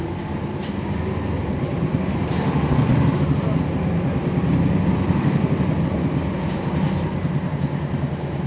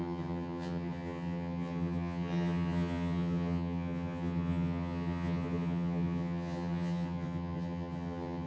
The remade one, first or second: second